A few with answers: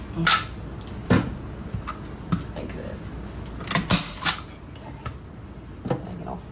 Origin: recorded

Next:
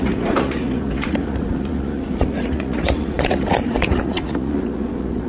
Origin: remade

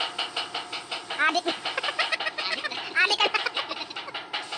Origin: recorded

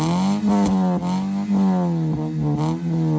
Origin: recorded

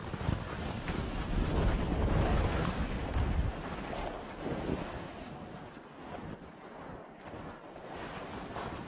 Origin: recorded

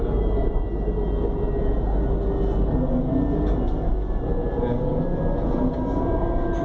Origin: recorded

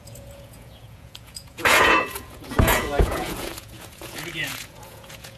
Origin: remade